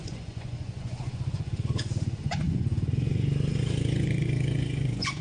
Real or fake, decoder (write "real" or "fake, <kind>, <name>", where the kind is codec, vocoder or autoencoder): fake, vocoder, Vocos